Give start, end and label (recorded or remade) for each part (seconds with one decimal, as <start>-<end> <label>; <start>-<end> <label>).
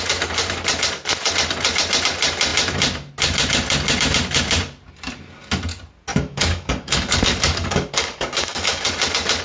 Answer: 0.0-6.1 recorded; 6.1-8.9 remade; 8.9-9.4 recorded